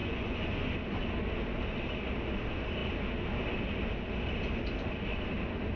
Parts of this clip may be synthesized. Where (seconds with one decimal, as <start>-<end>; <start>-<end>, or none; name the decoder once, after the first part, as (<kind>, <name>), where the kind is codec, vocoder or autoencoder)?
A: 0.0-0.7 (vocoder, Vocos)